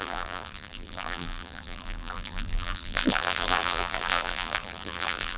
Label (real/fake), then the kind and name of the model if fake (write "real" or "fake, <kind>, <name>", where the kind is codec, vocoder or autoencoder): fake, vocoder, BigVGAN v2